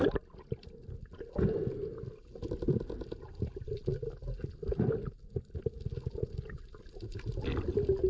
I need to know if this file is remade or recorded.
recorded